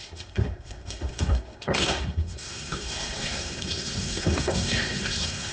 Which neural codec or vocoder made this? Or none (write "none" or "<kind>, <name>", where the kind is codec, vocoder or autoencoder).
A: codec, SNAC